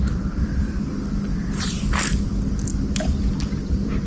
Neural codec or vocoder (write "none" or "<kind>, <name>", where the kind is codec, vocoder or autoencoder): vocoder, BigVGAN v2